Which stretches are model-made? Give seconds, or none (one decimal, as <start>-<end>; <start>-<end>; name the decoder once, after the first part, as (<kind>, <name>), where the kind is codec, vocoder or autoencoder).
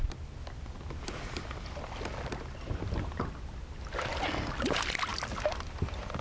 none